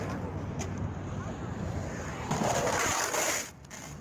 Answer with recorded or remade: recorded